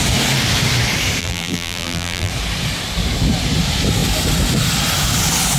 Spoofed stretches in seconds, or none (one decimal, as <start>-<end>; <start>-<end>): 1.2-2.3